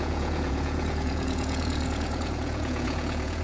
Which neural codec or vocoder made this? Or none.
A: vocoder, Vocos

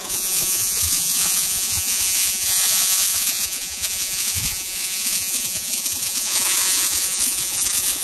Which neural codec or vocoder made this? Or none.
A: vocoder, Vocos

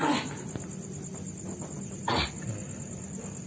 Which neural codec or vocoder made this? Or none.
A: none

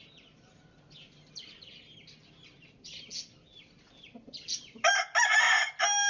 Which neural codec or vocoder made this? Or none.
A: none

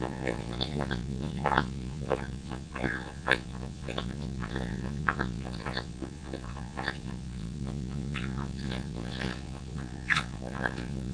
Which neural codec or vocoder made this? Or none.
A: vocoder, Vocos